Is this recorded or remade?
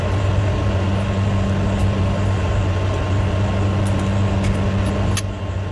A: recorded